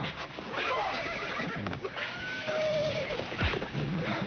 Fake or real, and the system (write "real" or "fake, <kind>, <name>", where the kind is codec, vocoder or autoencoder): fake, codec, DAC